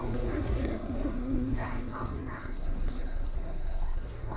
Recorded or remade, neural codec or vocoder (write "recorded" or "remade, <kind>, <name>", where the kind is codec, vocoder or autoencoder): remade, codec, SNAC